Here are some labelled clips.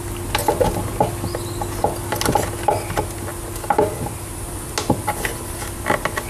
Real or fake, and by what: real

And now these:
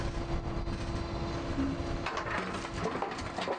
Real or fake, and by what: real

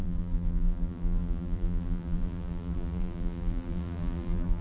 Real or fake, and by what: fake, vocoder, BigVGAN v2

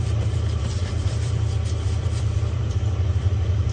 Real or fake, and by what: fake, vocoder, BigVGAN v2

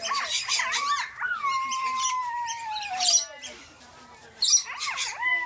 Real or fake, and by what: fake, vocoder, BigVGAN v2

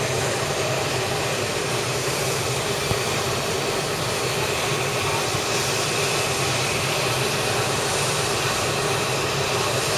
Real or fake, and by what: fake, vocoder, BigVGAN v2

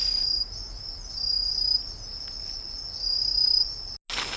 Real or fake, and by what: real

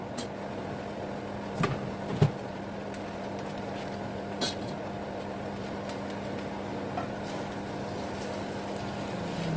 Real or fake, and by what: real